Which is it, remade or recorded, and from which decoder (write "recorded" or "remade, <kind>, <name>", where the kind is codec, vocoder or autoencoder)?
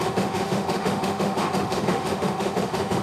remade, autoencoder, DAC-VAE